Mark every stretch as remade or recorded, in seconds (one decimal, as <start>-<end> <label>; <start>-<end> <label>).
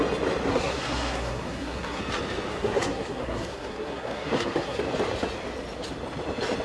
0.0-0.5 recorded; 0.5-2.0 remade; 2.0-2.5 recorded; 2.5-4.8 remade; 4.8-6.6 recorded